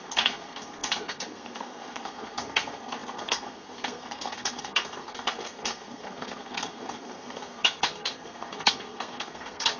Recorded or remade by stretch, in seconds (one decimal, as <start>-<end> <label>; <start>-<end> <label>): 0.0-9.8 remade